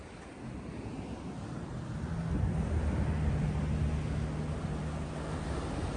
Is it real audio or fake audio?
real